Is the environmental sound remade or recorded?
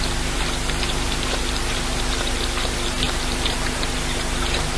recorded